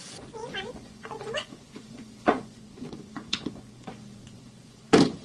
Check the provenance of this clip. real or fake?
fake